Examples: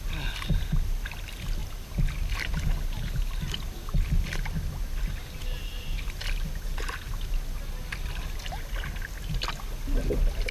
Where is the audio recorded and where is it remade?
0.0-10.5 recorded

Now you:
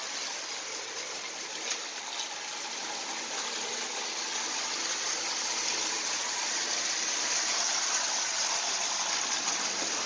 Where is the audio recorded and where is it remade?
0.0-10.1 recorded